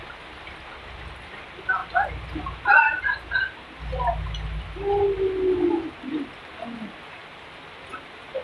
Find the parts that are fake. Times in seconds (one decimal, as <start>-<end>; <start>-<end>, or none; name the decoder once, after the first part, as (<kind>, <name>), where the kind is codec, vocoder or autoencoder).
none

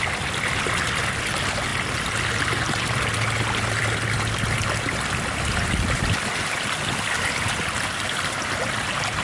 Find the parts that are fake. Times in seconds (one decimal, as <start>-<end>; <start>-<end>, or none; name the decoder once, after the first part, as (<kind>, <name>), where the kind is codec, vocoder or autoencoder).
none

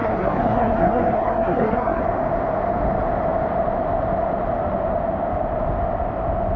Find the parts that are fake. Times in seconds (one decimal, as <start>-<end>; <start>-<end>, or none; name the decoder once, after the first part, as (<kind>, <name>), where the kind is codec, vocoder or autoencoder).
0.0-2.0 (codec, SNAC)

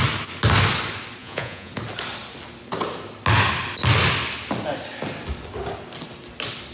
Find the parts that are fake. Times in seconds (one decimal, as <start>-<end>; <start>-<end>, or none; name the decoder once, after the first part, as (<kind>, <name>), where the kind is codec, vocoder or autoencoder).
1.2-1.7 (vocoder, Vocos)

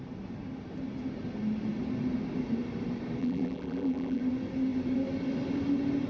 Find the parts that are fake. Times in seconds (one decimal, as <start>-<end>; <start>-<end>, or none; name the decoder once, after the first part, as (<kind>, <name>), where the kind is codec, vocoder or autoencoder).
3.2-4.2 (vocoder, BigVGAN v2)

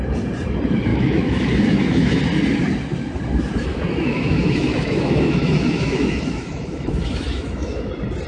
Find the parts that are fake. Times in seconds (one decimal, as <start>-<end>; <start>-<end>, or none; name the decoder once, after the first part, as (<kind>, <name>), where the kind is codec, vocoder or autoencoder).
0.9-2.2 (autoencoder, DAC-VAE); 3.7-7.9

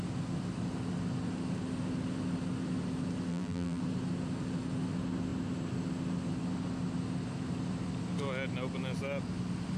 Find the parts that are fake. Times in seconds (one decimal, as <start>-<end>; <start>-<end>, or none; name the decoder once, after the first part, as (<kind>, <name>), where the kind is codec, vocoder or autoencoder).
3.3-3.8 (vocoder, BigVGAN v2)

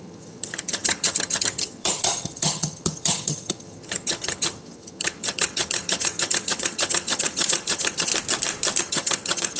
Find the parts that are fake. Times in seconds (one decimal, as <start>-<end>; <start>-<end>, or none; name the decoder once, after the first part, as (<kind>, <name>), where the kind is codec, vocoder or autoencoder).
0.0-8.1 (vocoder, HiFi-GAN); 8.8-9.6